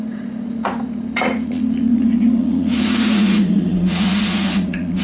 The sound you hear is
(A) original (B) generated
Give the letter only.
B